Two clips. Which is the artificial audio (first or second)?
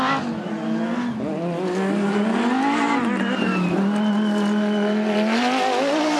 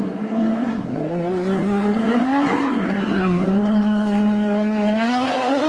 second